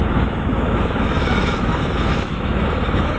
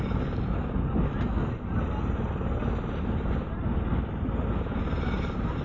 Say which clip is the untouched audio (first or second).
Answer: second